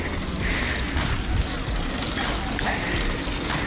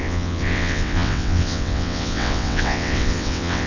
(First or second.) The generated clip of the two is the second